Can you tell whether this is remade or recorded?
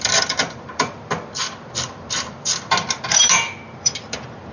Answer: remade